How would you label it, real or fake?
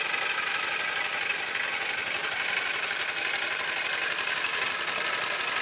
real